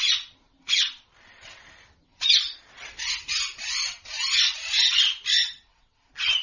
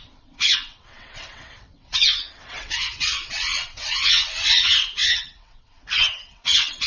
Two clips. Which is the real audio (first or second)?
first